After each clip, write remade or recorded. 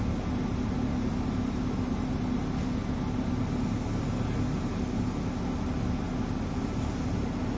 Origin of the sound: recorded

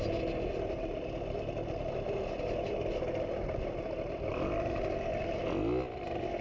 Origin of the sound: recorded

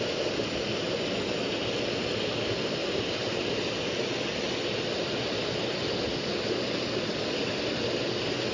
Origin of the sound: recorded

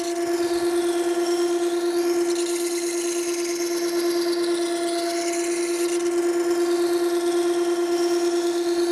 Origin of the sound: recorded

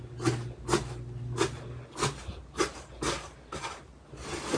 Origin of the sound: recorded